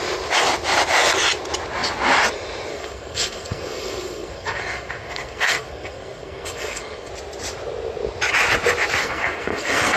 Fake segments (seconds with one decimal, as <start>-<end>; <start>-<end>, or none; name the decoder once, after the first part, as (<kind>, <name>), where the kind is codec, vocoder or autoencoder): 2.7-7.1 (codec, SNAC); 9.0-10.0